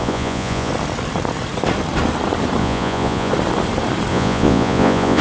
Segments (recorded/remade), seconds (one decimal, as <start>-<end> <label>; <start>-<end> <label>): 0.0-0.7 remade; 0.7-2.6 recorded; 2.6-3.3 remade; 3.3-4.1 recorded; 4.1-5.2 remade